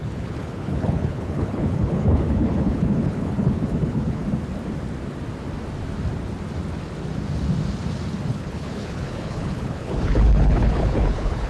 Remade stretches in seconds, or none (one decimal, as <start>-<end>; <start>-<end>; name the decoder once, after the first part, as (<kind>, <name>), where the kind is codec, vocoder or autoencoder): 0.0-4.2 (codec, HILCodec); 8.3-11.5